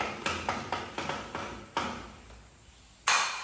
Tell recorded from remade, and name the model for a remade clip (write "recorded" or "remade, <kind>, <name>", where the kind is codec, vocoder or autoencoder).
recorded